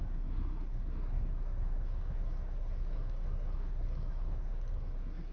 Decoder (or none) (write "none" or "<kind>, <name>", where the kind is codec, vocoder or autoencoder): codec, SNAC